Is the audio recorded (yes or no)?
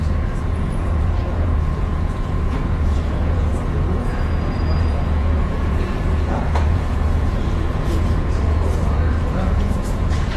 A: no